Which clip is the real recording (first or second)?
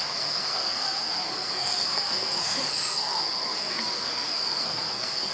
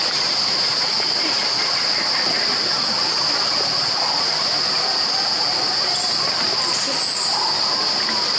second